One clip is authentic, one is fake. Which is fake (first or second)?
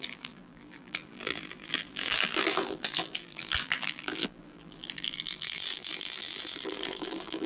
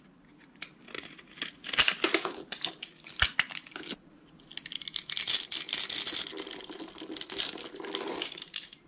first